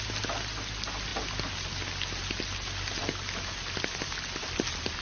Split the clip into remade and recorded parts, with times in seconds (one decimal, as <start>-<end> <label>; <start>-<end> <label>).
0.0-5.0 recorded